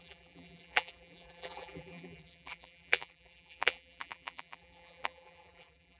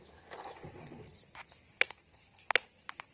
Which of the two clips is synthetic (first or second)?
first